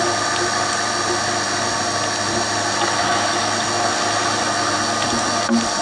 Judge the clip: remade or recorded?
recorded